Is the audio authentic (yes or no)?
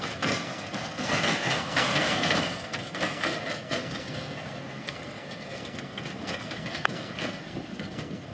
no